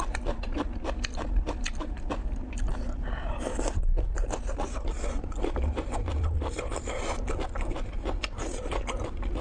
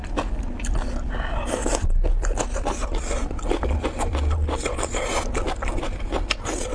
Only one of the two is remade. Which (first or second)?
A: first